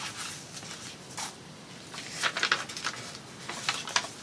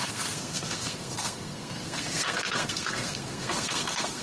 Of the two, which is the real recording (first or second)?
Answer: first